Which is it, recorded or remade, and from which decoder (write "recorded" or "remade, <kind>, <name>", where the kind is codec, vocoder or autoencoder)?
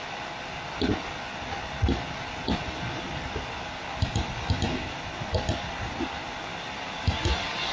recorded